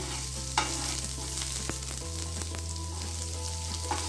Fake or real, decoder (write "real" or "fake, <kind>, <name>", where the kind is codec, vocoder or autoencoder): real